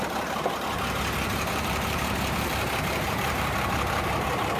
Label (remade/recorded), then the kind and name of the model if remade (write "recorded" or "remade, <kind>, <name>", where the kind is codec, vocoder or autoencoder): remade, vocoder, BigVGAN v2